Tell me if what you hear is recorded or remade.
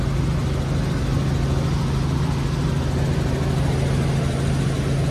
recorded